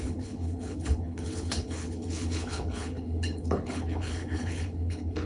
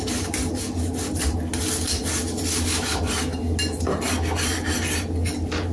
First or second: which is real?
second